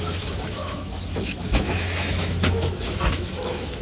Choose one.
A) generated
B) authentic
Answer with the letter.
A